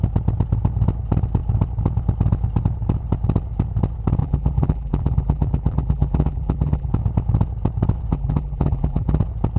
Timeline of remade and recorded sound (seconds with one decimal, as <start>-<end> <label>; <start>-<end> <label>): 0.0-4.2 recorded; 4.2-6.9 remade; 6.9-8.1 recorded; 8.1-9.2 remade; 9.2-9.6 recorded